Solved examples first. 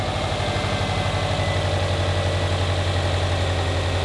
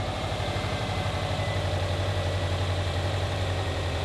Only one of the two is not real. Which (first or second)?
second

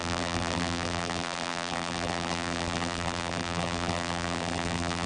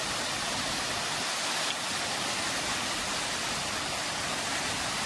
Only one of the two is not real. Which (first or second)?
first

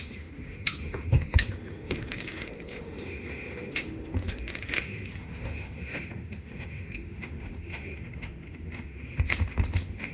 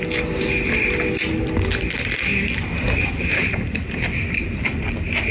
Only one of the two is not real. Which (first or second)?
first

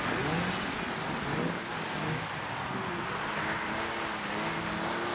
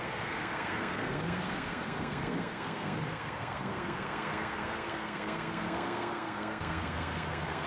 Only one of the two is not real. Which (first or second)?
second